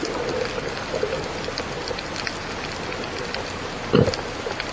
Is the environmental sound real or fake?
real